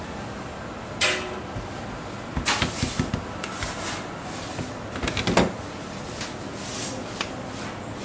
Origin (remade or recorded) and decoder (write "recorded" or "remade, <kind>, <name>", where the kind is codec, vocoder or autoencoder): recorded